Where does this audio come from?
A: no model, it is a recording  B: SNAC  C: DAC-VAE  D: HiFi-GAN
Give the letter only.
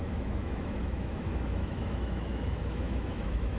C